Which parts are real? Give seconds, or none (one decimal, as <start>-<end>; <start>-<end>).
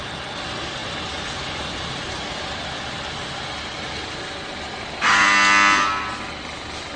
0.0-7.0